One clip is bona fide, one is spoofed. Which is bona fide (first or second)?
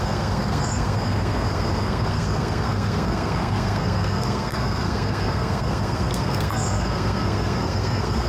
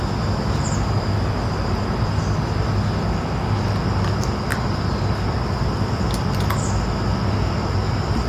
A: second